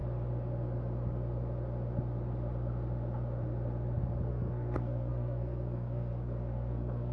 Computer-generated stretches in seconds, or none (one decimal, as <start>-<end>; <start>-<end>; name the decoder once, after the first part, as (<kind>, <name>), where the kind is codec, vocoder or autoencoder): 4.3-7.1 (codec, SNAC)